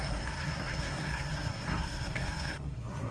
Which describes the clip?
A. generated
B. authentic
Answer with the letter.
A